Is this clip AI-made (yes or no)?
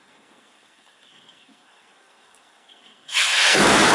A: yes